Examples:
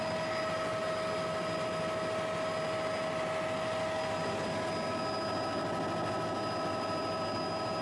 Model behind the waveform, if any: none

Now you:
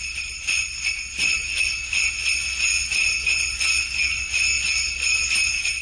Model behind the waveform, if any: none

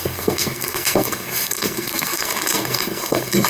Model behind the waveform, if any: codec, SNAC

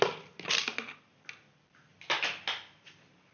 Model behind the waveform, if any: none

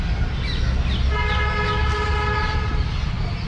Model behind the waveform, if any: none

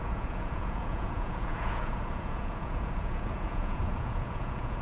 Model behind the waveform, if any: vocoder, Vocos